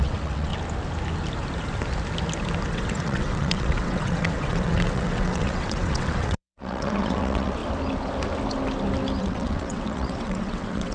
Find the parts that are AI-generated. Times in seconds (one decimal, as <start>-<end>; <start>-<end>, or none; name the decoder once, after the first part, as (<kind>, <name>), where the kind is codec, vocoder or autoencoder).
0.0-0.5 (vocoder, WaveNeXt); 2.7-7.6; 9.2-10.9